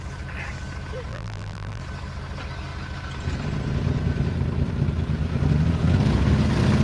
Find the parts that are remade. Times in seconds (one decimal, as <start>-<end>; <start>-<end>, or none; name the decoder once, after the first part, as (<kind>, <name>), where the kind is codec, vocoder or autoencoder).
1.1-1.8 (vocoder, BigVGAN v2)